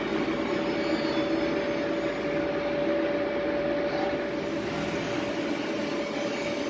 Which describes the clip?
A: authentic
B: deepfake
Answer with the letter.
A